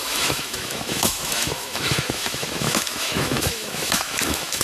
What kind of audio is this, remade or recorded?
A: remade